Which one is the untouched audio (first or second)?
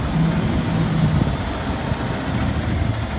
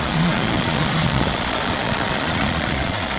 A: first